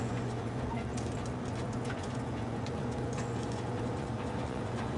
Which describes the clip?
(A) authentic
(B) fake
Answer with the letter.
B